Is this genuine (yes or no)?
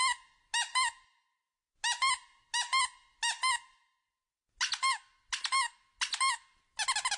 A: yes